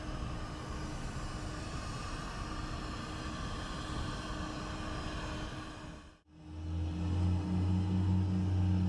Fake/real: real